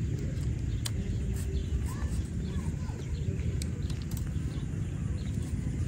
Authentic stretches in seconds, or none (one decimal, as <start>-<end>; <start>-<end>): 0.0-1.6; 4.4-5.9